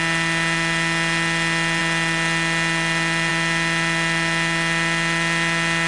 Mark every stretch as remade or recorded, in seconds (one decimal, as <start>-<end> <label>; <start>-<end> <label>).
0.0-5.9 recorded